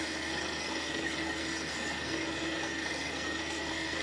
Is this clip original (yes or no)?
no